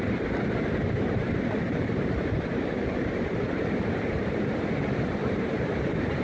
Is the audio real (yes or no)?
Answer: no